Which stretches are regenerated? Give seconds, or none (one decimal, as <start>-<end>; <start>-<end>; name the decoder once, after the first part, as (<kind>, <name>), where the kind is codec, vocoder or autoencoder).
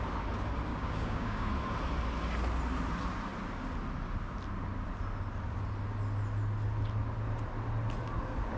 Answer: 0.7-1.5 (codec, DAC)